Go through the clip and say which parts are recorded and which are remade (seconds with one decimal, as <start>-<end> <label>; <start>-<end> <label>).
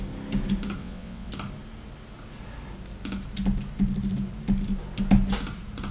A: 0.0-0.8 recorded; 0.8-1.3 remade; 1.3-5.9 recorded